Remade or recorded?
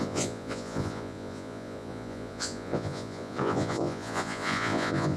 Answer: remade